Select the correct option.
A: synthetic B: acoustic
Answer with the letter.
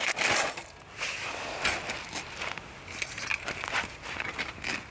B